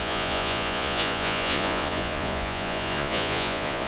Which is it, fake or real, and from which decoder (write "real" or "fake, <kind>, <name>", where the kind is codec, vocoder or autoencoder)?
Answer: fake, vocoder, Vocos